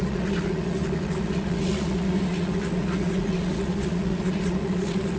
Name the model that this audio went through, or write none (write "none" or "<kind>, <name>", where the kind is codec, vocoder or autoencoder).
vocoder, Vocos